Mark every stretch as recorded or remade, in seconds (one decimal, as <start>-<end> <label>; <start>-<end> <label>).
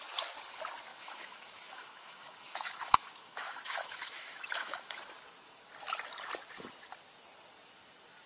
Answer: 0.0-0.9 recorded; 0.9-5.0 remade; 5.0-8.3 recorded